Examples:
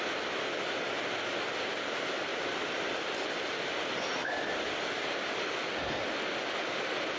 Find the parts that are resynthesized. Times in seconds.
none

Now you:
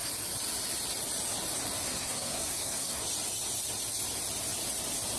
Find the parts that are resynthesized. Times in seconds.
1.8-3.0

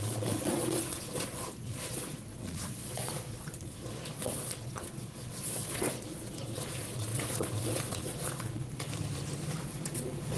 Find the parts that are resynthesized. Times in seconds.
0.0-8.9; 9.6-10.4